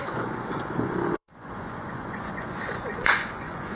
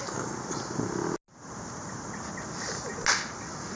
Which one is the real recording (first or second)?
second